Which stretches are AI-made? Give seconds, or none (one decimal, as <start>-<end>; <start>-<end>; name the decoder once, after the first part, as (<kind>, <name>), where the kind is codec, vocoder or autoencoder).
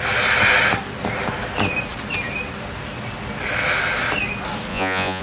4.7-5.2 (vocoder, Vocos)